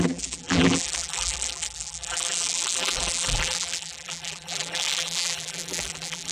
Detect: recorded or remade remade